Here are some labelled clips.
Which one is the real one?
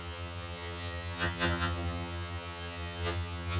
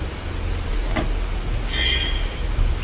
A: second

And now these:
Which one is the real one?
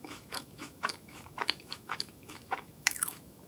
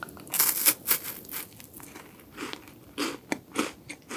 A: second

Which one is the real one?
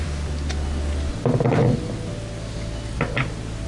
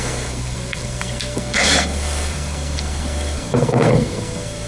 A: first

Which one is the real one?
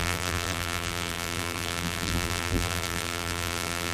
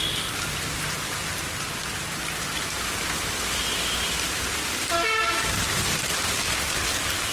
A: second